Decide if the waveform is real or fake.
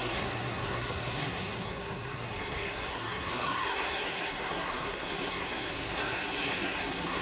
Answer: fake